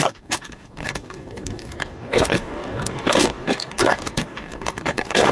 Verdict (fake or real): fake